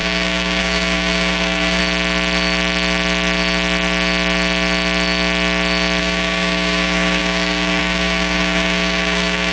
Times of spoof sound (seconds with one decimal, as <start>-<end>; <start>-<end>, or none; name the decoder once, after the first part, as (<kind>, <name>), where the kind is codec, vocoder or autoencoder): 0.0-1.8 (codec, DAC); 6.0-9.5